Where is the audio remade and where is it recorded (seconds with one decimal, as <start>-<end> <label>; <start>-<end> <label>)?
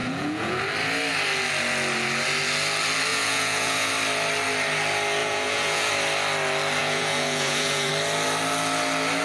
0.0-0.6 remade; 0.6-3.1 recorded; 3.1-3.9 remade; 3.9-5.2 recorded; 5.2-5.9 remade; 5.9-6.8 recorded; 6.8-7.9 remade; 7.9-9.2 recorded